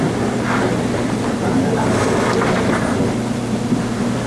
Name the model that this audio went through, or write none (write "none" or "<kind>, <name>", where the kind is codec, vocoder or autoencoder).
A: none